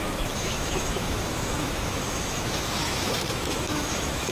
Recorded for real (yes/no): no